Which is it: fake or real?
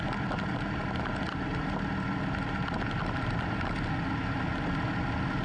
real